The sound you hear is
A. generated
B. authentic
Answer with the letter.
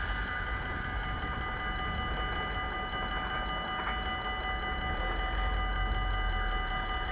B